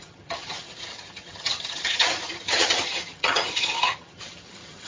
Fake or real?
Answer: fake